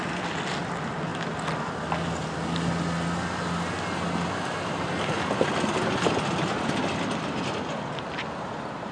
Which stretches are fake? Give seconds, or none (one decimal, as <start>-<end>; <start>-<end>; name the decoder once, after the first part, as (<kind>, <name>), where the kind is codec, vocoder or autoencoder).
none